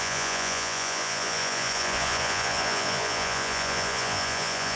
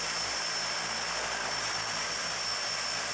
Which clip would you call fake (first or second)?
first